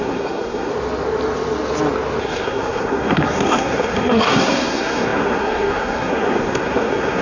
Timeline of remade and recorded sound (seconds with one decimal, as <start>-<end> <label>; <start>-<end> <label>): 0.0-0.7 remade; 0.7-2.2 recorded; 2.2-7.2 remade